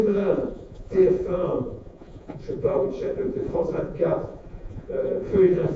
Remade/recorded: remade